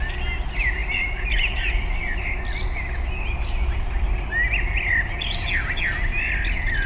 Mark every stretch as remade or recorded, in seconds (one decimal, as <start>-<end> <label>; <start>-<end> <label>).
0.0-6.9 recorded